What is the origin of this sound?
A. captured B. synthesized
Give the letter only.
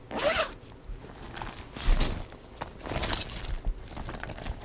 A